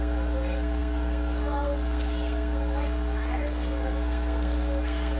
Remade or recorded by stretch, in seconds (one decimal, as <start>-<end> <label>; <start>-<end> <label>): 0.0-5.2 remade